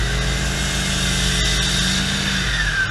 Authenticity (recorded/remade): recorded